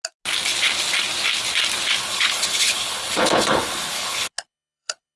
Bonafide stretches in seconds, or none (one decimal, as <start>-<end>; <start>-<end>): 0.0-2.0